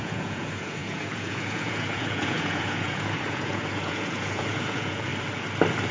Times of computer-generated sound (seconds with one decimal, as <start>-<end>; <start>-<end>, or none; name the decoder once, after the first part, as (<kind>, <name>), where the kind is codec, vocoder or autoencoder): 0.0-5.1 (vocoder, Vocos)

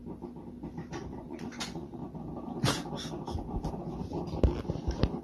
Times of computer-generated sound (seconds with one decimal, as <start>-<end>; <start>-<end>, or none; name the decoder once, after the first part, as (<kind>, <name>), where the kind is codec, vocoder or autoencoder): 1.1-2.0 (vocoder, Vocos)

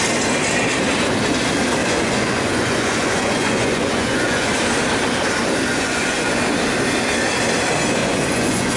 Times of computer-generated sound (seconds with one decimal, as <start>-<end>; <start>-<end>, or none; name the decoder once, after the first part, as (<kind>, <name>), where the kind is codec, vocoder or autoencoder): 1.8-4.5 (vocoder, Vocos); 5.7-6.4; 8.0-8.8

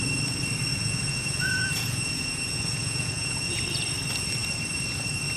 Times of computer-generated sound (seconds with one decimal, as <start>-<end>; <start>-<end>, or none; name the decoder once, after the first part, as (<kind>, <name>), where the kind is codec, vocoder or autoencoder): 0.7-3.6 (vocoder, Vocos)

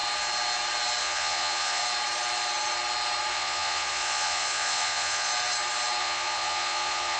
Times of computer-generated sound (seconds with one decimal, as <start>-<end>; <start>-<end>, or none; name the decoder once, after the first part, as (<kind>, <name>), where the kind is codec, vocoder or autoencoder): 1.0-1.8 (vocoder, Vocos); 3.3-5.3; 6.0-7.2

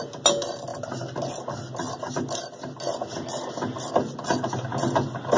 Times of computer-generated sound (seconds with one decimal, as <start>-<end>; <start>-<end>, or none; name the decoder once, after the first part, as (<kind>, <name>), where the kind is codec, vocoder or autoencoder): none

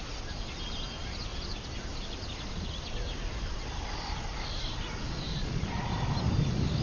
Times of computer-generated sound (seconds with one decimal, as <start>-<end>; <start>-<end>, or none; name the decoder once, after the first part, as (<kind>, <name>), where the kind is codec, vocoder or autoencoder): 5.3-5.9 (vocoder, Vocos)